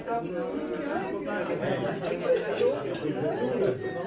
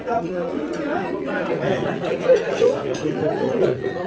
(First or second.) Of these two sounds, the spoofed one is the second